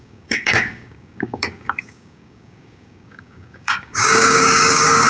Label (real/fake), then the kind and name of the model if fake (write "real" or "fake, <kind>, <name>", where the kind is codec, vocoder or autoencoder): fake, codec, DAC